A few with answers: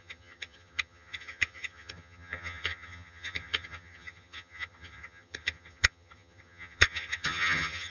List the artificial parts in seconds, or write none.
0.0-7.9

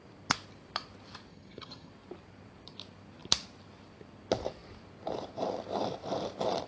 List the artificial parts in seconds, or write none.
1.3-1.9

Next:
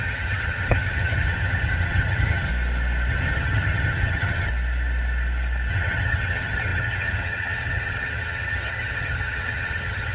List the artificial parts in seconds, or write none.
0.0-2.5; 3.1-4.5; 5.7-10.1